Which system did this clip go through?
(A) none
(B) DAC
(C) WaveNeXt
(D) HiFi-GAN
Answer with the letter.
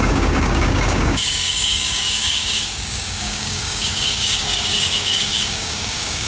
B